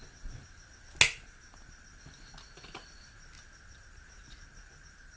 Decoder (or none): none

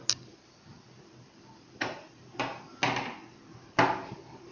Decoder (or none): none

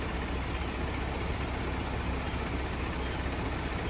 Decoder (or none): none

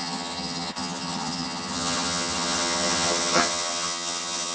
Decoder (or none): vocoder, HiFi-GAN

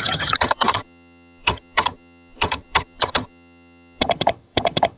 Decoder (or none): vocoder, HiFi-GAN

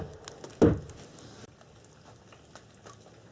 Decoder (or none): none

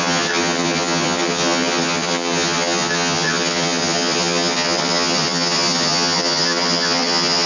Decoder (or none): vocoder, HiFi-GAN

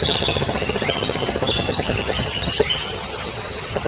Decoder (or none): vocoder, HiFi-GAN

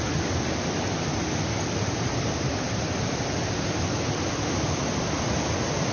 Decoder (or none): none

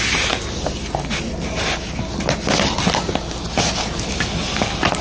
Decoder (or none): none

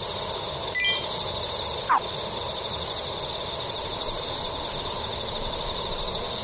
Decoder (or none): none